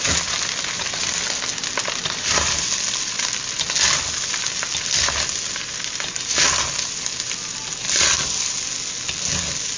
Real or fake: real